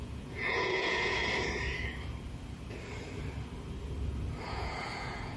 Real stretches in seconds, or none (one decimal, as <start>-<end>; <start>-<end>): 1.2-4.4

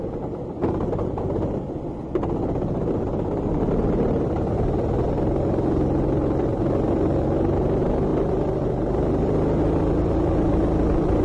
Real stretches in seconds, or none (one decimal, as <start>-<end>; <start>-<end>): 0.0-8.1; 8.6-11.2